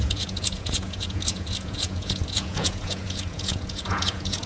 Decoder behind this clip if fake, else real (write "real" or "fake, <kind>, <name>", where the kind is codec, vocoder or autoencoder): fake, vocoder, Vocos